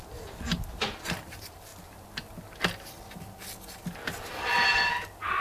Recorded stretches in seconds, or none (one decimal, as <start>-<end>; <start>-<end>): 0.0-5.4